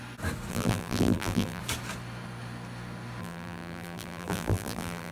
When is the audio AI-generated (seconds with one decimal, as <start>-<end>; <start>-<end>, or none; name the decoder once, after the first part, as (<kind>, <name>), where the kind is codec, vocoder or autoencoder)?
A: 0.5-1.6 (vocoder, BigVGAN v2); 3.2-5.1